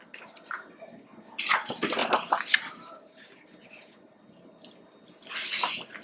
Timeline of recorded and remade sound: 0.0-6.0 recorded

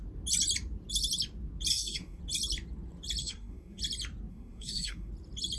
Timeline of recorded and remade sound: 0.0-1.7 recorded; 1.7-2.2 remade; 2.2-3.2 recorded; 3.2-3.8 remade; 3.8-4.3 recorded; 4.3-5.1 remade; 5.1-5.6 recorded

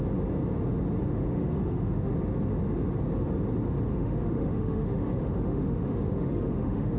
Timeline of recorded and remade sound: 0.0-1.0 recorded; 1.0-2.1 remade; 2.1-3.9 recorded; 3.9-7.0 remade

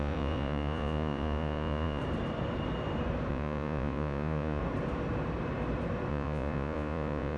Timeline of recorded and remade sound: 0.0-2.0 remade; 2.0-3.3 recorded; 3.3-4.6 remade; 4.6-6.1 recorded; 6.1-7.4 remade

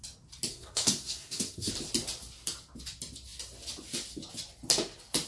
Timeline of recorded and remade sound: 0.0-0.5 recorded; 0.5-1.7 remade; 1.7-5.3 recorded

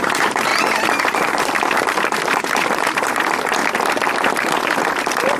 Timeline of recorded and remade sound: 0.0-0.5 remade; 0.5-2.4 recorded; 2.4-3.6 remade; 3.6-5.4 recorded

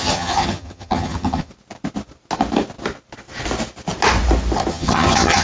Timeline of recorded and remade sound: 0.0-1.5 remade; 1.5-4.7 recorded; 4.7-5.4 remade